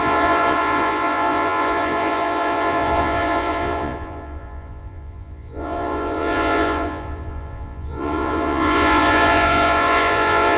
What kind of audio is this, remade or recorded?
remade